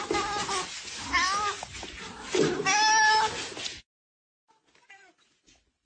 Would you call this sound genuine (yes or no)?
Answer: yes